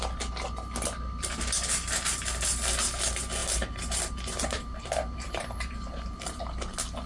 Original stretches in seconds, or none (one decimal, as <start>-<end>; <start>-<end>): 0.0-3.4; 6.4-7.1